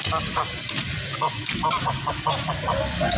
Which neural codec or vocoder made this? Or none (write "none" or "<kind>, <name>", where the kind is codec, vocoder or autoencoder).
none